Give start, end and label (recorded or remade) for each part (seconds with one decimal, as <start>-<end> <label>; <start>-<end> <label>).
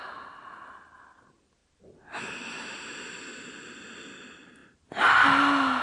0.0-1.6 recorded; 1.6-3.1 remade; 3.1-5.8 recorded